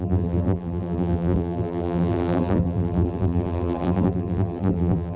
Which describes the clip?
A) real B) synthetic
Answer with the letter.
B